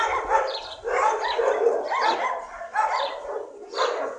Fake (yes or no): yes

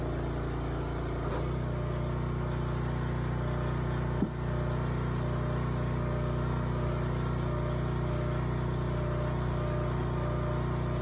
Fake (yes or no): no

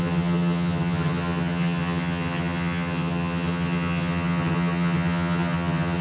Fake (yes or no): yes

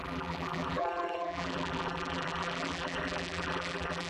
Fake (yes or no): yes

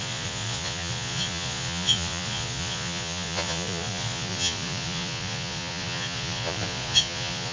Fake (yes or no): yes